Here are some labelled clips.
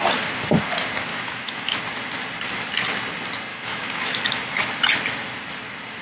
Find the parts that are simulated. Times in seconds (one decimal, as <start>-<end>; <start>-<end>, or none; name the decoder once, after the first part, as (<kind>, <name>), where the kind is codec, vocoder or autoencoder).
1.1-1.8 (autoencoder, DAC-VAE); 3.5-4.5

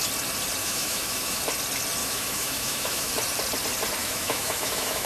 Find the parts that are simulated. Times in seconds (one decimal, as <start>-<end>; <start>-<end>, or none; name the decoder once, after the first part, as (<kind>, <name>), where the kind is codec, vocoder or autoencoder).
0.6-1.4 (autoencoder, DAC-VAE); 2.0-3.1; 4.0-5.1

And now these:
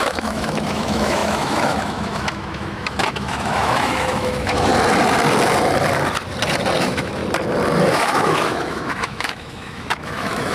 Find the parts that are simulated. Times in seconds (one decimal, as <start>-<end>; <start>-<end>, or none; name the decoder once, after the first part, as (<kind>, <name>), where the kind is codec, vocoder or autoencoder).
0.0-4.7 (autoencoder, DAC-VAE); 6.8-7.2; 7.9-10.5

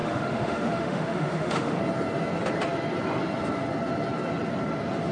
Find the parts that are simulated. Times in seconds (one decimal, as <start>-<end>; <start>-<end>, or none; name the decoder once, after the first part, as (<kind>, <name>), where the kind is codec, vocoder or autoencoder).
0.0-1.8 (autoencoder, DAC-VAE)

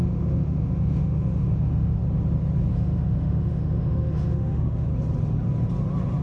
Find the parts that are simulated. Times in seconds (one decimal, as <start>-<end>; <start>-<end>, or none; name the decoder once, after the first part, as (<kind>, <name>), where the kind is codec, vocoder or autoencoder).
0.0-2.0 (autoencoder, DAC-VAE); 2.7-4.9

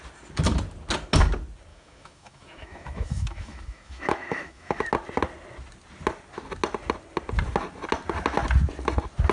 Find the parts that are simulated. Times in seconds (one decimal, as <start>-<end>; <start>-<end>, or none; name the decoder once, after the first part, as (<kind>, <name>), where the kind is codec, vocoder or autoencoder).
1.7-4.8 (autoencoder, DAC-VAE)